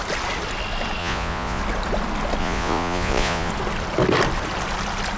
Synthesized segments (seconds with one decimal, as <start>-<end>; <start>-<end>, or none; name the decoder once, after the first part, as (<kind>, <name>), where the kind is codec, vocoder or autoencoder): 1.0-1.6 (vocoder, Vocos); 2.4-3.5